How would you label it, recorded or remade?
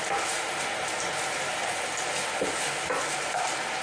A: recorded